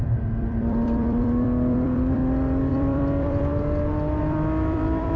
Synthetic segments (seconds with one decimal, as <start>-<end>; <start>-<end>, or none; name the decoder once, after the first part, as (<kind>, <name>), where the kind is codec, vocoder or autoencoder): 0.0-2.2 (vocoder, BigVGAN v2); 2.7-3.5; 4.2-5.2